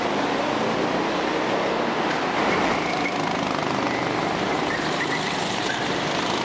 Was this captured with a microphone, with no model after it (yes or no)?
yes